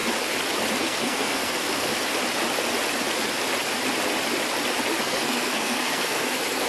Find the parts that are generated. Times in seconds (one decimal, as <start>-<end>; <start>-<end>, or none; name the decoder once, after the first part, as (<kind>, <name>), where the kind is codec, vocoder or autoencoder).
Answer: 0.8-1.9 (codec, SNAC); 5.0-6.7